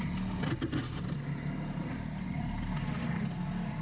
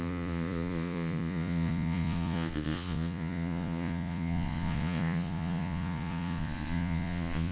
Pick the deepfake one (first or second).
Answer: second